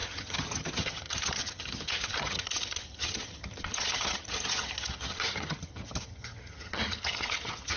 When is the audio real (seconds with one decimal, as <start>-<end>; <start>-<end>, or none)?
none